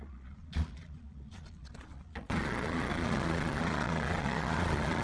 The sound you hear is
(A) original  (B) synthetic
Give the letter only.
B